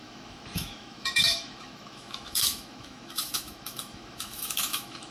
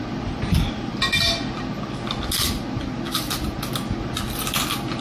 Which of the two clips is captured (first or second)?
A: second